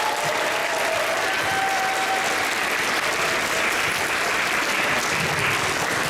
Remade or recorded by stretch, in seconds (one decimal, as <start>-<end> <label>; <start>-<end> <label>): 0.0-6.1 recorded